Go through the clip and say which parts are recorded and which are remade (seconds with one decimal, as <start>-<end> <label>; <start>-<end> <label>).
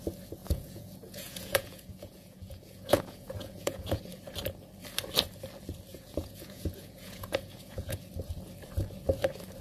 0.0-0.4 recorded; 0.4-4.0 remade; 4.0-5.9 recorded; 5.9-8.0 remade; 8.0-9.6 recorded